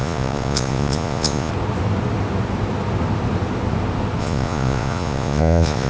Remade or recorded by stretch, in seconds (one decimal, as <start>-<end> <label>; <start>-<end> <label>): 0.0-1.5 remade; 1.5-4.2 recorded; 4.2-5.9 remade